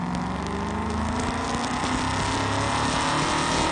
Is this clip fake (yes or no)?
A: no